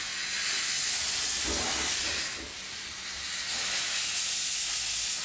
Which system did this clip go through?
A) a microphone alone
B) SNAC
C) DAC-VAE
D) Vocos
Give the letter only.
A